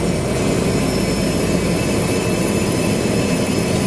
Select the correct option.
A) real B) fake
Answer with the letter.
A